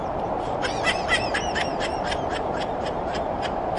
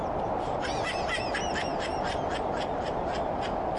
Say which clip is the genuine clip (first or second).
second